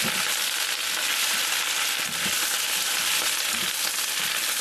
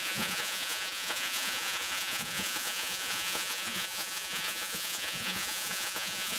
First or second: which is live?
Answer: first